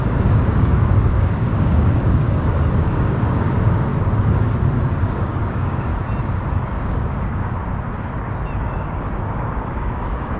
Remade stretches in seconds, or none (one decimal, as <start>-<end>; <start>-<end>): 0.0-3.9; 4.9-5.9; 6.5-7.6; 8.6-10.4